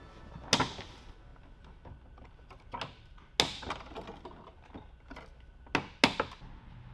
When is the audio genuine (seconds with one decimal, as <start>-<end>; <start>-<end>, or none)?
0.0-6.9